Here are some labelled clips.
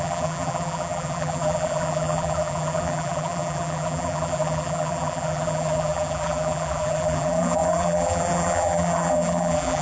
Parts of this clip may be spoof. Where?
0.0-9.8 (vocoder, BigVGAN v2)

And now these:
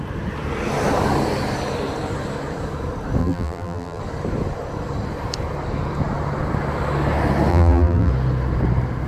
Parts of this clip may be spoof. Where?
3.2-4.0 (vocoder, BigVGAN v2); 7.5-8.1

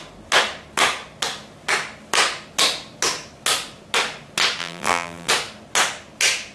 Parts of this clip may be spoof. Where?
4.6-5.3 (vocoder, BigVGAN v2)

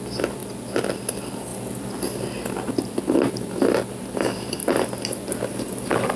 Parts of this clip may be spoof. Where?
0.0-0.4 (vocoder, BigVGAN v2); 1.1-1.5; 2.7-4.6